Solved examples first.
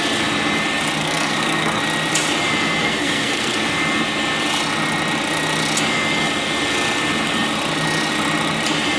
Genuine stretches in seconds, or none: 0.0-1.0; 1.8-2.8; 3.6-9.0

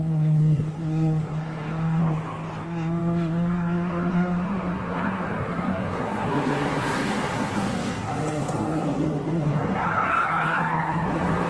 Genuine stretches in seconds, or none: 2.0-2.6